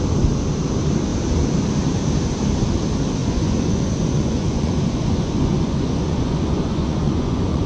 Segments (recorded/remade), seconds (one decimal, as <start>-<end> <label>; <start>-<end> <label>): 0.0-3.2 recorded; 3.2-7.7 remade